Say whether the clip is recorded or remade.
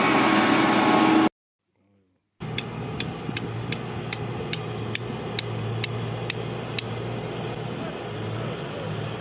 recorded